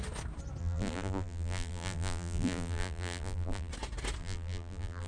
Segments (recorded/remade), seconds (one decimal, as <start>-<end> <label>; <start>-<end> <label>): 0.0-0.6 recorded; 0.6-3.7 remade; 3.7-4.2 recorded; 4.2-5.1 remade